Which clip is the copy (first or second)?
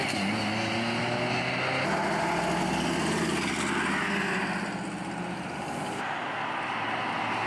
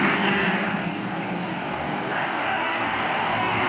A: second